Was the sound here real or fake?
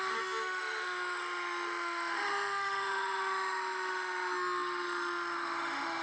fake